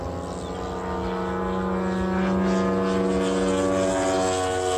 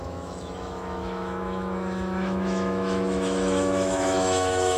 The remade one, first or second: second